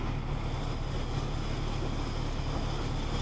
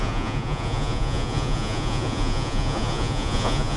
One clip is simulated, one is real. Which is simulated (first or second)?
second